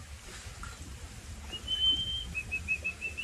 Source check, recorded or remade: recorded